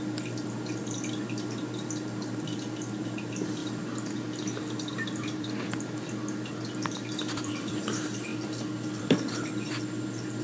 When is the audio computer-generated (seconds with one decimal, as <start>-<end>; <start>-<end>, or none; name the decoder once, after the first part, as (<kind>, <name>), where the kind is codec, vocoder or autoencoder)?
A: 0.0-8.3 (vocoder, BigVGAN v2); 9.0-10.4